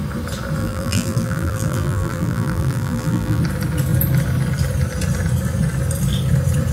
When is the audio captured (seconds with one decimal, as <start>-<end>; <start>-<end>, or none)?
0.0-0.6; 3.4-6.7